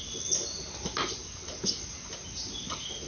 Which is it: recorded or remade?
recorded